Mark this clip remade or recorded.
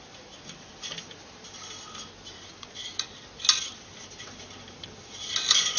recorded